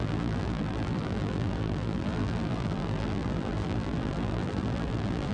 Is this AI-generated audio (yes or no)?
yes